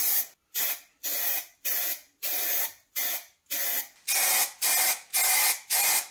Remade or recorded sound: recorded